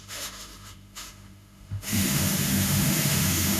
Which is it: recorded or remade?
remade